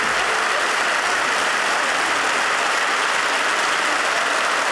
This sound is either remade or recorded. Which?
recorded